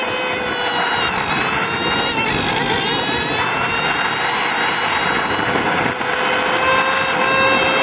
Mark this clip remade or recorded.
recorded